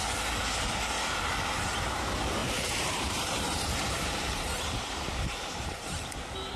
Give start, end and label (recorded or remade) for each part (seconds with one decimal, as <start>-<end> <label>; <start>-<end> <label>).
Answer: 0.0-2.4 recorded; 2.4-6.1 remade; 6.1-6.6 recorded